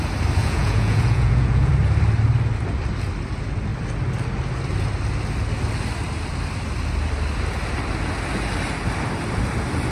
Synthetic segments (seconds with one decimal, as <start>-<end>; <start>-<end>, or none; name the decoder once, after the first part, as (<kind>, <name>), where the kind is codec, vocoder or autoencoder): 0.4-1.7 (vocoder, Vocos)